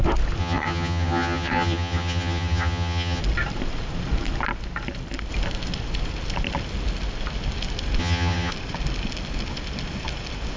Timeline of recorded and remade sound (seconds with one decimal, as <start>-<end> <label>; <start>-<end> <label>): 0.0-0.4 recorded; 0.4-3.2 remade; 3.2-8.0 recorded; 8.0-8.5 remade; 8.5-10.6 recorded